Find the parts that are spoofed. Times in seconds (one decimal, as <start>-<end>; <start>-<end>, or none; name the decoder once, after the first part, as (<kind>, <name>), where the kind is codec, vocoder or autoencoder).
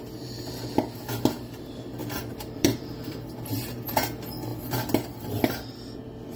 2.0-3.9 (vocoder, BigVGAN v2)